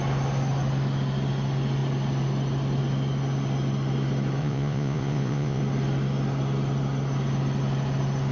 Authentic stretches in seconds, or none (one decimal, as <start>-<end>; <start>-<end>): 0.0-4.4; 5.6-8.3